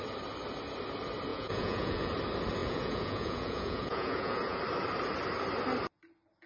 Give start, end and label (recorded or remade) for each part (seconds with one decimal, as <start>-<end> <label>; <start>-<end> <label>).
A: 0.0-1.3 recorded; 1.3-2.1 remade; 2.1-2.6 recorded; 2.6-4.6 remade; 4.6-6.5 recorded